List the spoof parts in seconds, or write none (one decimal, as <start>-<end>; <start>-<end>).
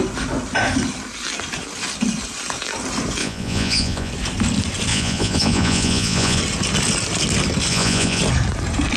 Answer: 3.2-4.1; 4.9-6.4; 7.7-8.2